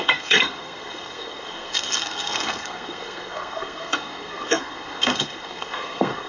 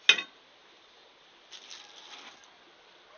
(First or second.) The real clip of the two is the second